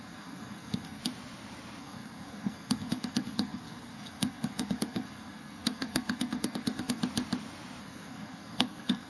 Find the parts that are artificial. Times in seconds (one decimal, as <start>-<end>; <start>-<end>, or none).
0.0-1.0; 1.8-7.0; 7.8-9.1